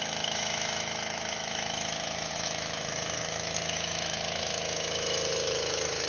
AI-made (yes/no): yes